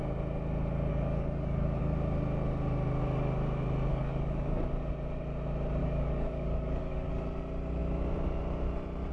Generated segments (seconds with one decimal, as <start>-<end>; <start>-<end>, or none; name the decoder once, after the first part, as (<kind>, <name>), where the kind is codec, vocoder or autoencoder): 0.9-1.8 (codec, DAC); 3.9-4.6; 5.8-7.1